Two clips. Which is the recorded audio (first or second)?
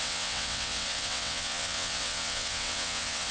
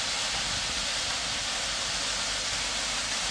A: second